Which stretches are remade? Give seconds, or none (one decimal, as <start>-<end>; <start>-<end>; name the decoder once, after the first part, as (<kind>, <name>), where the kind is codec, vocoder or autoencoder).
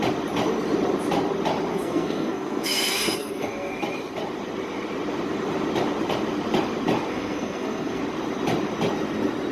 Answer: 1.7-3.8 (codec, SNAC); 7.1-8.0